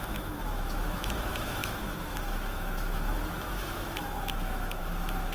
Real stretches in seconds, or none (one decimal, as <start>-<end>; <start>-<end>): none

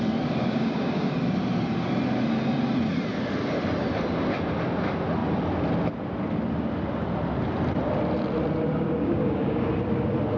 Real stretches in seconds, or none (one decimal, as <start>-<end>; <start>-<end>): 0.0-0.4; 1.1-9.0; 9.7-10.4